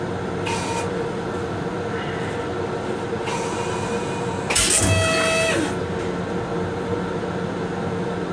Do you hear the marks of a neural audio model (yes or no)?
no